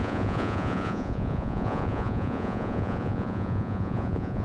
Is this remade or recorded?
remade